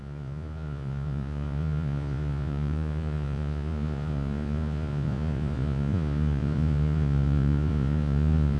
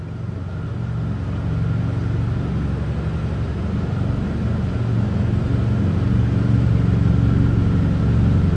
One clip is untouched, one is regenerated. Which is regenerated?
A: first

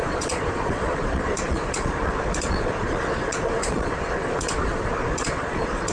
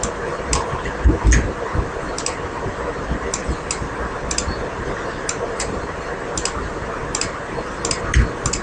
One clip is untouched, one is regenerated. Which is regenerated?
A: first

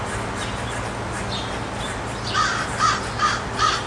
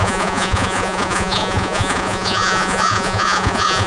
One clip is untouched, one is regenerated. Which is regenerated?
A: second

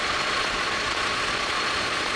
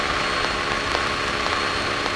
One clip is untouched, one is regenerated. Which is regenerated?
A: first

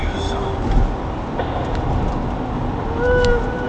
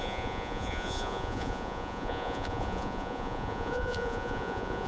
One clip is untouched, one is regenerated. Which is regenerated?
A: second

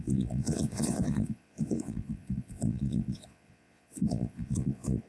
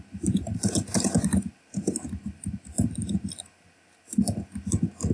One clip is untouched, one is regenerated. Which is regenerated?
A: first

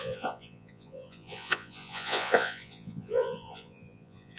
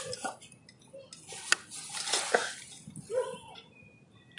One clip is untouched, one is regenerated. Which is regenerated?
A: first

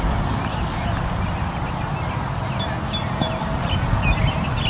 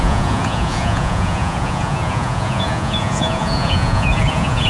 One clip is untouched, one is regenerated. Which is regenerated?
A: second